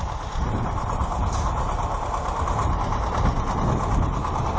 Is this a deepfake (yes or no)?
no